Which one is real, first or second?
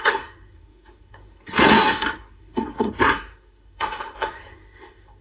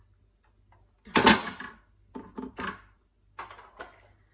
second